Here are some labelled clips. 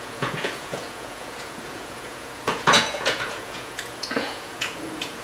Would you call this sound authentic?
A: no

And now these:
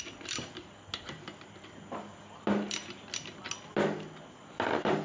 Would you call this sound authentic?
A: yes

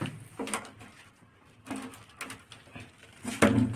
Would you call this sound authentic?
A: yes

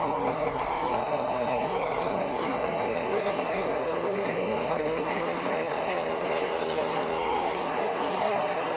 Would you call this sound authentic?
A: no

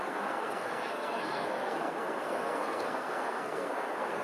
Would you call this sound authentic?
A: no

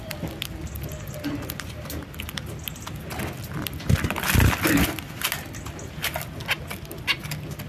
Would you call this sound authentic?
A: yes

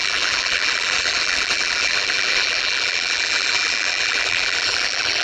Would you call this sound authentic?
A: no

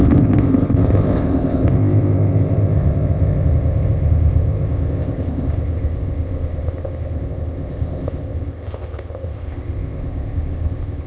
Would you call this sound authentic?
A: no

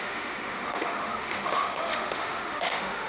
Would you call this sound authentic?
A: no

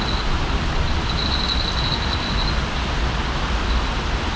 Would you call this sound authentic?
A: yes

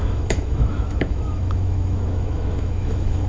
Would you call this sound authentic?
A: no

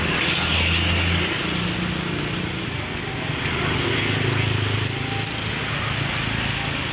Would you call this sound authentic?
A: yes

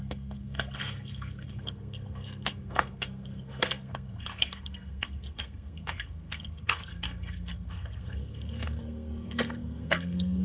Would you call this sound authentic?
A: no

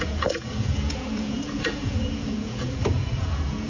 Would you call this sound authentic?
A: no